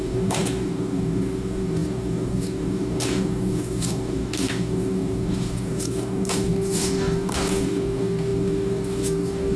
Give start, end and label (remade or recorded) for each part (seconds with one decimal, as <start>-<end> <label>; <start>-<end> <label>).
0.0-9.6 remade